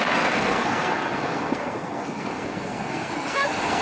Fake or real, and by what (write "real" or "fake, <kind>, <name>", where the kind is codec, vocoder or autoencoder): fake, codec, SNAC